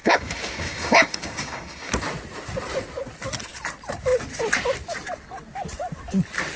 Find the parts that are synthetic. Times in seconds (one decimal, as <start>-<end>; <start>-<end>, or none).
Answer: 0.0-1.9